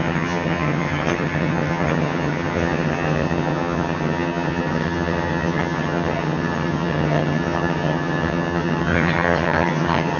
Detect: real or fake fake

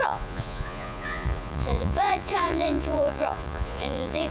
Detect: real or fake fake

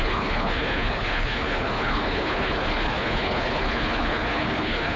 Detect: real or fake fake